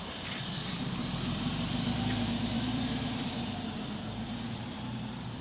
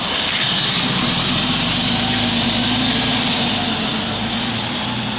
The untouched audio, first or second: second